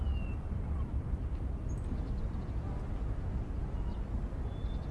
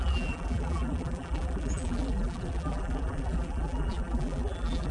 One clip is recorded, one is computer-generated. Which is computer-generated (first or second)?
second